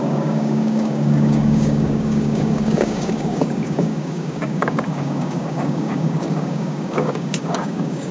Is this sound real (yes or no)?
no